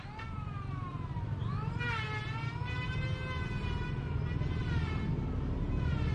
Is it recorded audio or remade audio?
recorded